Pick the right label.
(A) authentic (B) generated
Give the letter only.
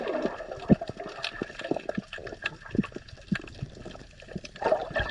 A